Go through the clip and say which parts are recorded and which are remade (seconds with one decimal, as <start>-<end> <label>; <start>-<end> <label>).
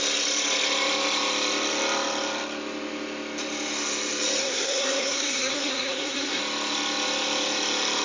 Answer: 0.0-4.4 recorded; 4.4-6.4 remade; 6.4-8.0 recorded